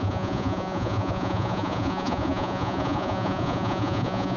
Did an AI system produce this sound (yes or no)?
yes